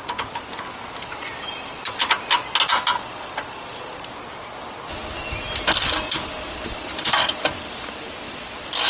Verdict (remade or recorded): recorded